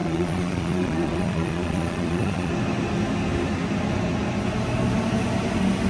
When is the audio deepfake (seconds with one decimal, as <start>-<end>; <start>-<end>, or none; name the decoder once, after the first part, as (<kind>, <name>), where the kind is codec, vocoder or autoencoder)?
0.0-2.5 (vocoder, Vocos)